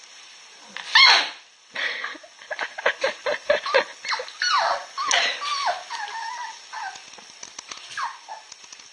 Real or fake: real